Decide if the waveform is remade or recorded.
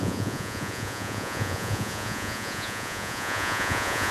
remade